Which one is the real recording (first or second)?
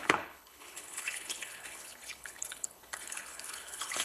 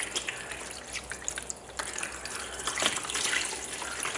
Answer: second